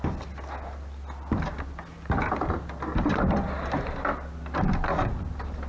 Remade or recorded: recorded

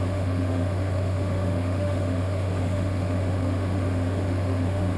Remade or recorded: remade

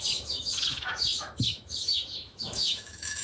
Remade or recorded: remade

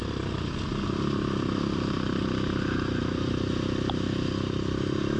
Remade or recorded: recorded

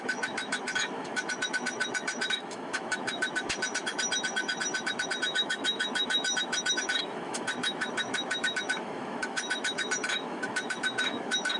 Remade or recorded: remade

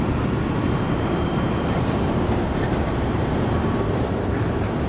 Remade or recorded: remade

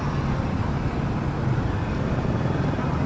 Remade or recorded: recorded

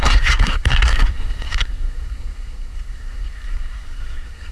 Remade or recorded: remade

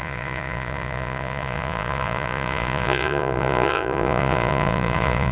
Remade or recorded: remade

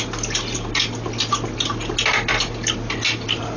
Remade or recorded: recorded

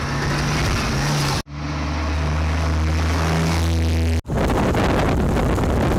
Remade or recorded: recorded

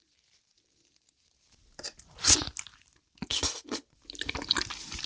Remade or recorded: recorded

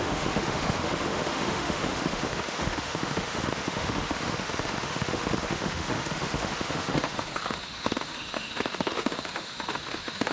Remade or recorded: remade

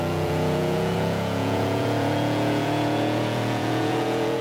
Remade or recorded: remade